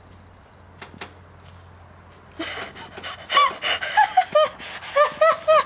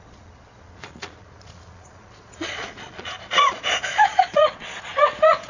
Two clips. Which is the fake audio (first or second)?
second